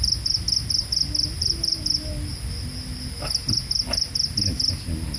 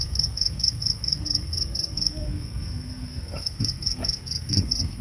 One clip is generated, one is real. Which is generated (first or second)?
second